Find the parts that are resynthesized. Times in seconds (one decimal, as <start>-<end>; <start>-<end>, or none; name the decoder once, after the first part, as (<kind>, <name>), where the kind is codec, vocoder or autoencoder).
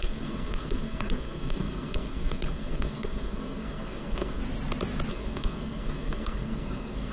0.0-4.4 (codec, SNAC); 5.1-7.1